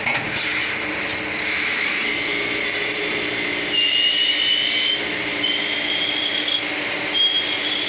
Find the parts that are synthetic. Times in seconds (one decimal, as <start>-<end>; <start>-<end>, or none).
none